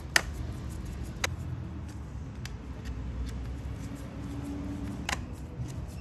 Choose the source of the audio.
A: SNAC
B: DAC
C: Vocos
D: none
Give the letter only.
D